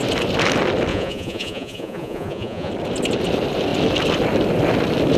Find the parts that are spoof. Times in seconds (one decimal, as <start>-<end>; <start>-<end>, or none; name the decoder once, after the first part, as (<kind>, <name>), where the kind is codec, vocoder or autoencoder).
0.9-2.7 (vocoder, Vocos)